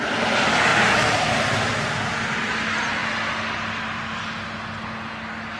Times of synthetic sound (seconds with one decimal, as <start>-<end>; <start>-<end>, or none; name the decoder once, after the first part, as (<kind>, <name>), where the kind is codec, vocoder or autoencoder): none